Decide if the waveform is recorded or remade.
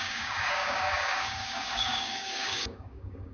remade